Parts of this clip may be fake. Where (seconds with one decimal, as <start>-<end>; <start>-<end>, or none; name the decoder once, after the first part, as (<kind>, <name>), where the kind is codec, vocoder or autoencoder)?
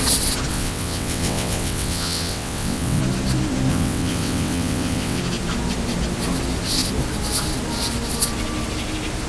0.5-3.0 (vocoder, WaveNeXt); 3.7-5.2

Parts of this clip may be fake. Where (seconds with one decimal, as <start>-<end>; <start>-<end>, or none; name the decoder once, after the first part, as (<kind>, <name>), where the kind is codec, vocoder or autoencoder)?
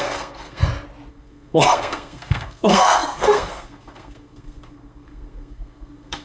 0.0-0.6 (codec, SNAC); 1.1-6.2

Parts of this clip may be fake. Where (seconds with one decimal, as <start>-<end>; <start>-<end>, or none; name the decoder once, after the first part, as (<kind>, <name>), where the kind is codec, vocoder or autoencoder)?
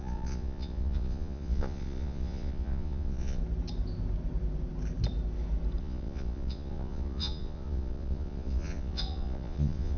0.0-3.4 (vocoder, Vocos); 5.8-10.0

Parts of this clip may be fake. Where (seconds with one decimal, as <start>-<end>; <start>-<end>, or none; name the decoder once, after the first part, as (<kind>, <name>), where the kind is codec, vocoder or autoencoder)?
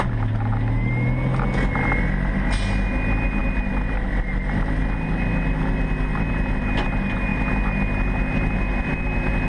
none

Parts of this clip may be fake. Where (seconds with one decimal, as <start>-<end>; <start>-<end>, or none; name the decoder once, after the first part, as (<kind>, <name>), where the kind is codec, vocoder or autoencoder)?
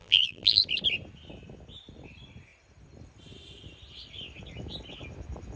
0.0-0.6 (vocoder, BigVGAN v2)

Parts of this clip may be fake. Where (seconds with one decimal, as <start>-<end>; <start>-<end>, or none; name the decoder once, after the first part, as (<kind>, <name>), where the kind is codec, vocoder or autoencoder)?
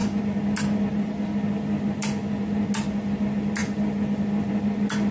none